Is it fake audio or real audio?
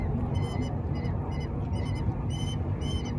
real